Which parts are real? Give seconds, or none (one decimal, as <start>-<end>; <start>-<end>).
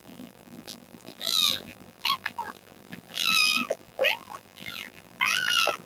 none